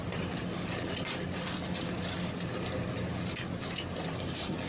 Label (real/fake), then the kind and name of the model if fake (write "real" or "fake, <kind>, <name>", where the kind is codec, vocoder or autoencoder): real